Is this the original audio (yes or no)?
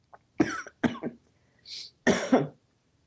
yes